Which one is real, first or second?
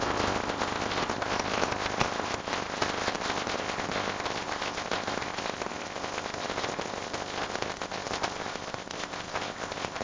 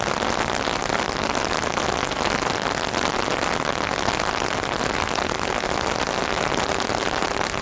second